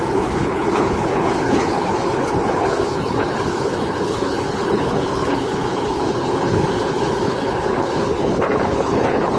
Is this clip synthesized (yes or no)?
yes